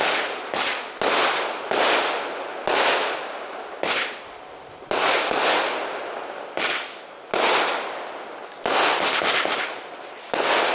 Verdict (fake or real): real